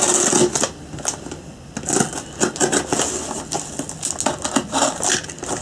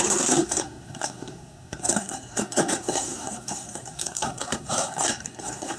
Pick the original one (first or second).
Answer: first